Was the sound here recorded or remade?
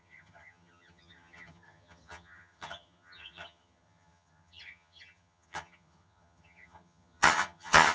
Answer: remade